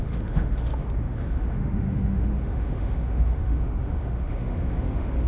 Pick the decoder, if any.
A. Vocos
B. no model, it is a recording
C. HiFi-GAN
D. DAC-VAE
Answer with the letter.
D